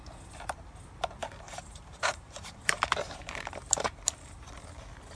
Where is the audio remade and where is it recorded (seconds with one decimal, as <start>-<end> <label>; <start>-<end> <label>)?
0.0-1.2 recorded; 1.2-4.3 remade; 4.3-5.1 recorded